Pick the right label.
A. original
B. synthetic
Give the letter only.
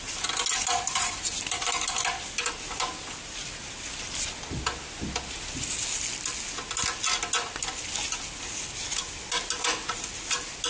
A